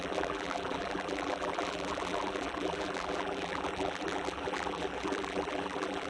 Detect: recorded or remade remade